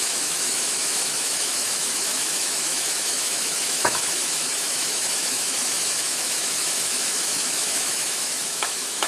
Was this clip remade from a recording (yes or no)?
yes